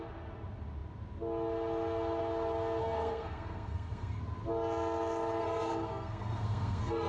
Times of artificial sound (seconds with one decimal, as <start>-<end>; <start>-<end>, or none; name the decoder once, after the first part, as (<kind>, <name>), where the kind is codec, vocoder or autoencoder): 2.8-4.2 (codec, SNAC); 5.4-7.1